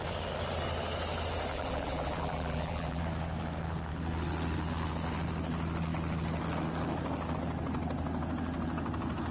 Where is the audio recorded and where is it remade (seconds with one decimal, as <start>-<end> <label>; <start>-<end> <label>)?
0.0-1.5 recorded; 1.5-3.0 remade; 3.0-9.3 recorded

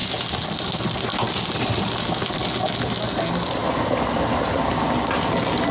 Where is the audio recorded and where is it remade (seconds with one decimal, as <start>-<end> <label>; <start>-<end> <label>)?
0.0-5.7 recorded

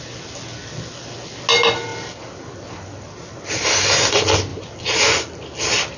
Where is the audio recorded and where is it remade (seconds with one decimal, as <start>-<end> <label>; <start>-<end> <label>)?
0.0-6.0 recorded